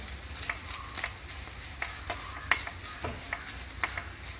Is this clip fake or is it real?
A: real